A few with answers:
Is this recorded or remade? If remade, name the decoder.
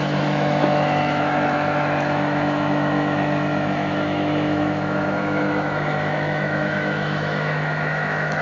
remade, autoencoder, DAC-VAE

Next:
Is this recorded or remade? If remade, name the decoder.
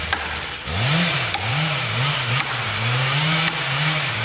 remade, vocoder, BigVGAN v2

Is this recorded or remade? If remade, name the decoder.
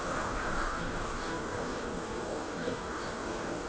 remade, codec, DAC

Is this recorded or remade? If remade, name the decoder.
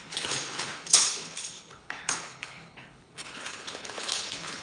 remade, codec, HILCodec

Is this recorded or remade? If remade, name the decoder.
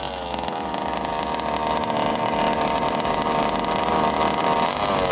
recorded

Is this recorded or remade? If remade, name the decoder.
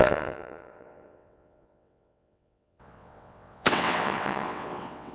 remade, vocoder, WaveNeXt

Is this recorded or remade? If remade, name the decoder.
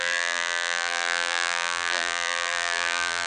remade, vocoder, BigVGAN v2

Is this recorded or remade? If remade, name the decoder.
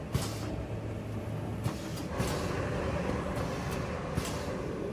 recorded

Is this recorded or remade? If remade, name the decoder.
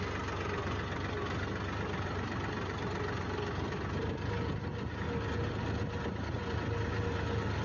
recorded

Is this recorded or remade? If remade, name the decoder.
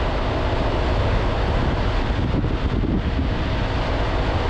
recorded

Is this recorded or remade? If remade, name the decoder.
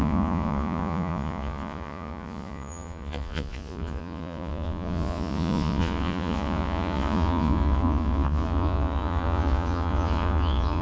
remade, vocoder, Vocos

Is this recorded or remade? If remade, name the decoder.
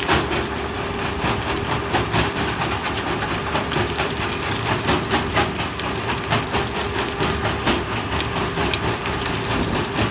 recorded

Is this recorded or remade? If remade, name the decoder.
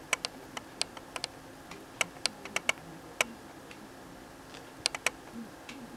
recorded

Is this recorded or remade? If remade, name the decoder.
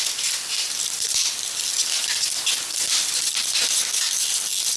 remade, vocoder, BigVGAN v2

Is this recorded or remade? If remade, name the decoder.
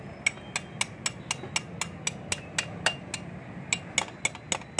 recorded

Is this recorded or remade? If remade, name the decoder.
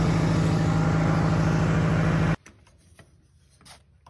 recorded